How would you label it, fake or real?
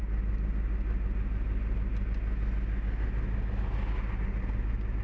real